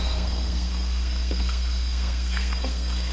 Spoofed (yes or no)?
yes